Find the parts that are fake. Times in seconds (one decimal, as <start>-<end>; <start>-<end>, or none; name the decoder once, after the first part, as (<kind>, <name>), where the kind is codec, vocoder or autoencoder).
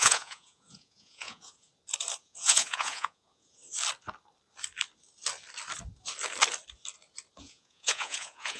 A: 0.0-1.7 (vocoder, Vocos); 2.2-3.6; 7.4-8.6